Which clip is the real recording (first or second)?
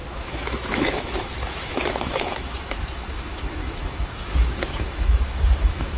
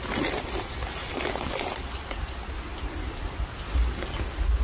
second